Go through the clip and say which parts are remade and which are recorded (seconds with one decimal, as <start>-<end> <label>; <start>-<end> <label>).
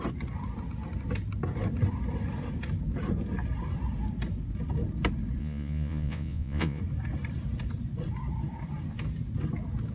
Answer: 0.0-5.4 recorded; 5.4-6.8 remade; 6.8-9.9 recorded